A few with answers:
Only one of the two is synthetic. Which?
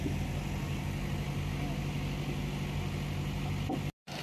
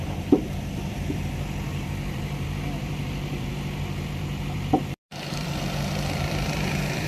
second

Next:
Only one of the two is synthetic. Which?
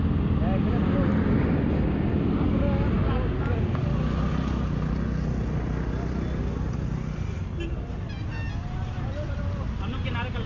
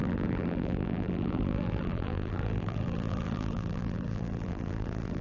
second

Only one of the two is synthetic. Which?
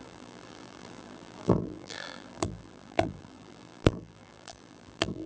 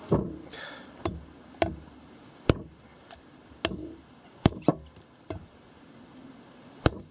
first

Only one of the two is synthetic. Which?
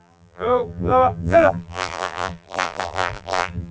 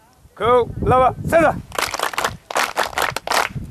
first